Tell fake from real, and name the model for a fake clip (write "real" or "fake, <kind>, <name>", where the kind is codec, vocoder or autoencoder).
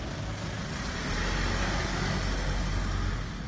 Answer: real